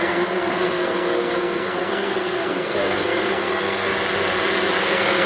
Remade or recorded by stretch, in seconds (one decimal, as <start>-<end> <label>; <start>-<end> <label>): 0.0-3.9 remade; 3.9-4.8 recorded; 4.8-5.3 remade